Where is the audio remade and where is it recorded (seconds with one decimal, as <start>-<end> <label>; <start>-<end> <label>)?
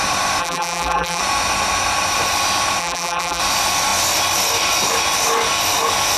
0.0-0.4 recorded; 0.4-1.2 remade; 1.2-2.8 recorded; 2.8-3.4 remade; 3.4-6.2 recorded